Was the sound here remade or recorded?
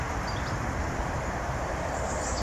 remade